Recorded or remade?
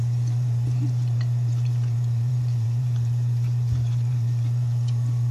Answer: remade